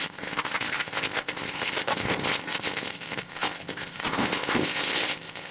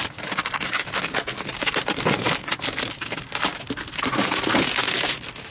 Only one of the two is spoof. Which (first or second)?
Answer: first